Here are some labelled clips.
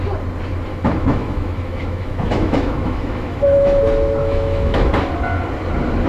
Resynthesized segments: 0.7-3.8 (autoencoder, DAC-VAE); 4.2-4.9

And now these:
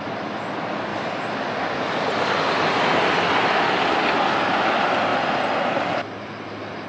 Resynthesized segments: none

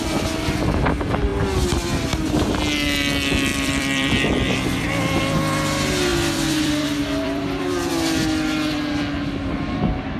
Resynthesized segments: 3.5-5.2 (vocoder, BigVGAN v2); 6.1-7.9

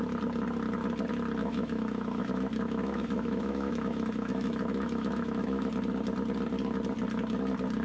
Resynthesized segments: 1.4-5.7 (autoencoder, DAC-VAE)

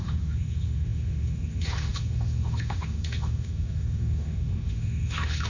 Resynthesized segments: 0.0-5.5 (autoencoder, DAC-VAE)

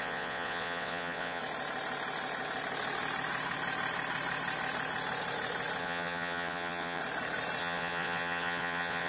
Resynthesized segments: 0.0-1.4 (vocoder, Vocos); 5.8-7.0; 7.6-9.1

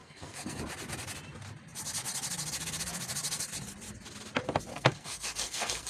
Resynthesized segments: 0.0-0.6 (codec, SNAC); 4.7-5.9